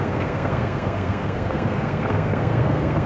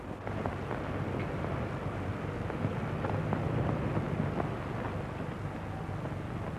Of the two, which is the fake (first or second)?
first